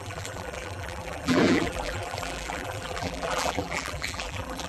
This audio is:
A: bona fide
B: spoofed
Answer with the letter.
B